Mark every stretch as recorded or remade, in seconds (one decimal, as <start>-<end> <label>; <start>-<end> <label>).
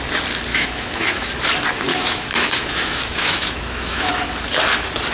0.0-0.5 recorded; 0.5-1.3 remade; 1.3-1.9 recorded; 1.9-4.1 remade; 4.1-5.1 recorded